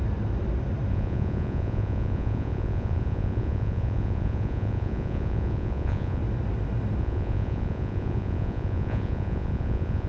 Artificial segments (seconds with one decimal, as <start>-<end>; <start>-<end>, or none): 0.9-6.2; 7.0-10.1